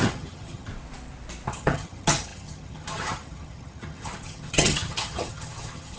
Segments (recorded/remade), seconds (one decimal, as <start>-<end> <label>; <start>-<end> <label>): 0.0-0.7 remade; 0.7-1.5 recorded; 1.5-6.0 remade